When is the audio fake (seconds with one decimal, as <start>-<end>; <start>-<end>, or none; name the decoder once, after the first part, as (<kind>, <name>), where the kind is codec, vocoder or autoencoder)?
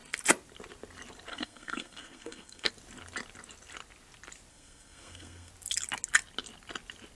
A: 1.3-2.7 (codec, SNAC); 4.5-5.5